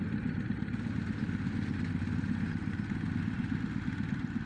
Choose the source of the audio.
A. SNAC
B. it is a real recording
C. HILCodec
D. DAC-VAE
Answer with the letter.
B